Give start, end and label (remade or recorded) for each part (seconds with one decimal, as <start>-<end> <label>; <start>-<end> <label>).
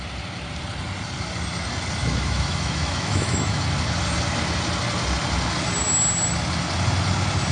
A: 0.0-2.0 recorded; 2.0-3.6 remade; 3.6-7.5 recorded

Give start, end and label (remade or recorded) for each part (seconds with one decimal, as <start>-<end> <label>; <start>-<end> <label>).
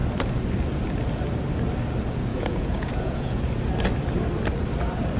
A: 0.0-2.3 recorded; 2.3-3.4 remade; 3.4-5.2 recorded